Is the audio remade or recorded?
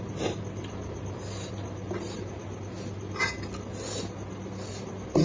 recorded